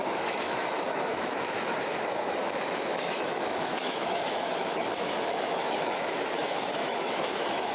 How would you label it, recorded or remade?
remade